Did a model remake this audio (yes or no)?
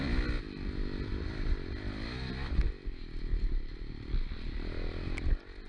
no